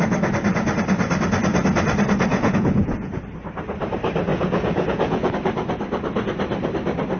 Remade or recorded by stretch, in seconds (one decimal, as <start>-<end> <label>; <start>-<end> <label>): 0.0-2.3 recorded; 2.3-3.2 remade; 3.2-4.3 recorded; 4.3-5.3 remade; 5.3-7.2 recorded